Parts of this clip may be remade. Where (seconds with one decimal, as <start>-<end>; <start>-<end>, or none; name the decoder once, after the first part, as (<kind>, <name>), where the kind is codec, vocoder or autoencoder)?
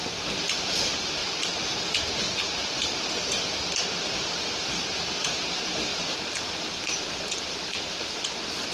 none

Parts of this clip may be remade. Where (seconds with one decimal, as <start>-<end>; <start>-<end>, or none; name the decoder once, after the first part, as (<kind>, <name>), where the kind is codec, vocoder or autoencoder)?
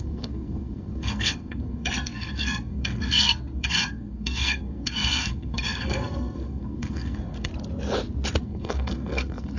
0.0-7.5 (codec, SNAC); 8.4-9.6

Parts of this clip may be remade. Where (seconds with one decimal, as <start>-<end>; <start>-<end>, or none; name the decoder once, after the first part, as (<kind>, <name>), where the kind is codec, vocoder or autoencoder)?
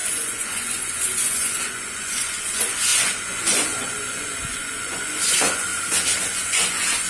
0.0-5.7 (vocoder, Vocos); 6.2-7.1